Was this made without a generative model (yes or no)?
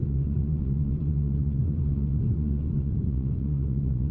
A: no